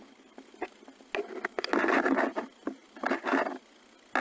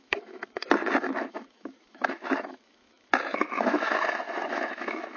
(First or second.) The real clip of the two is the first